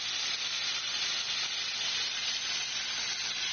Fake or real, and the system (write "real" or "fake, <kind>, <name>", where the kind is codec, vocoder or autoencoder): real